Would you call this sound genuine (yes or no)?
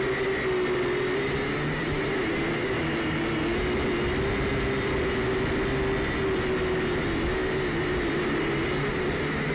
yes